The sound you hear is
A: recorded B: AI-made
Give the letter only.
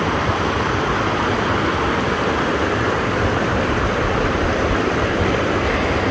A